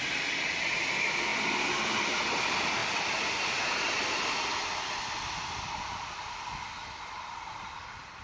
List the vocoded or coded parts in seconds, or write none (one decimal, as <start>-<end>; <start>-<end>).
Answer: 0.0-8.2